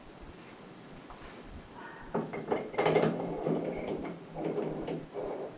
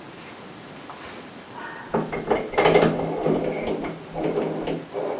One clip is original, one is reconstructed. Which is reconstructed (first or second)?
first